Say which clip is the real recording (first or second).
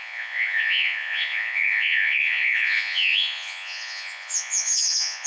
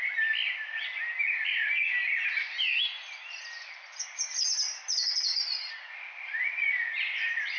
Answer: second